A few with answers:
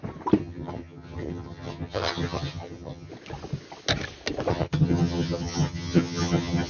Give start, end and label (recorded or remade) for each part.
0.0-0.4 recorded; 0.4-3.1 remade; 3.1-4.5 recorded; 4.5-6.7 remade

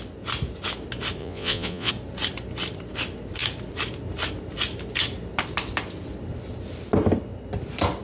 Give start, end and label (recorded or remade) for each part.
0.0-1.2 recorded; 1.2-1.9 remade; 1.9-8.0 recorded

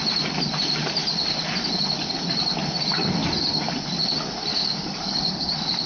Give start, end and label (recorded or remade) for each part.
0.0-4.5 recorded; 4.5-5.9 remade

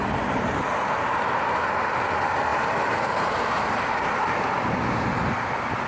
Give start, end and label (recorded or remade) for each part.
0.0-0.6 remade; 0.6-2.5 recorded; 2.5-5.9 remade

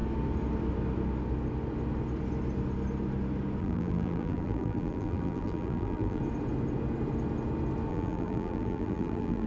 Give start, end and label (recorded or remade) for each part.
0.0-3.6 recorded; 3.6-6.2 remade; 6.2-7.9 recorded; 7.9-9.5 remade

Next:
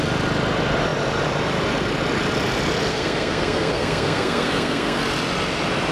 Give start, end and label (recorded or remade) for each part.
0.0-2.9 recorded; 2.9-5.0 remade; 5.0-5.9 recorded